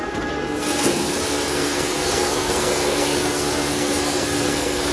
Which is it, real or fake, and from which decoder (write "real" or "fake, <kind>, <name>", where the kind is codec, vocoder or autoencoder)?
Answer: fake, codec, SNAC